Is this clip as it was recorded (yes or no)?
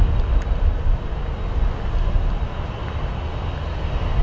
yes